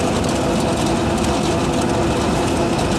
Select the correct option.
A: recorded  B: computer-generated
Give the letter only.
A